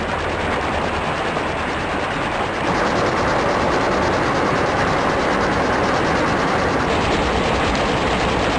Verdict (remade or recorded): recorded